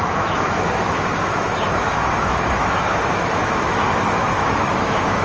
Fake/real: fake